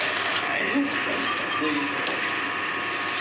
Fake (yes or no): yes